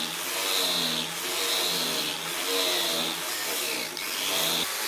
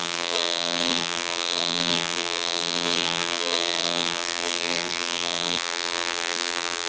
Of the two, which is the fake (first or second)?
second